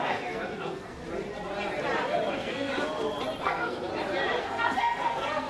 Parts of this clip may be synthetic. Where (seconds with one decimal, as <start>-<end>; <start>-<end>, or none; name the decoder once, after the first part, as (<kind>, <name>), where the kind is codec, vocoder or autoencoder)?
0.0-1.0 (codec, SNAC); 2.3-2.7; 3.4-3.9; 4.4-5.5